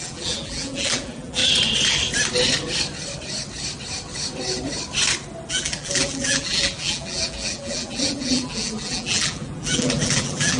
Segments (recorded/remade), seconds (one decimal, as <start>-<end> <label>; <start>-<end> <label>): 0.0-1.4 remade; 1.4-5.5 recorded; 5.5-10.6 remade